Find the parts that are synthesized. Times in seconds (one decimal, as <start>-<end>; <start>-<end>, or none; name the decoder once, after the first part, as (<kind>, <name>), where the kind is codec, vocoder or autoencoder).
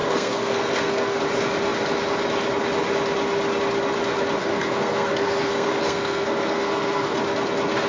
0.0-1.2 (codec, SNAC); 4.4-7.2